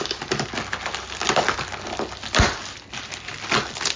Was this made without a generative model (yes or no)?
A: yes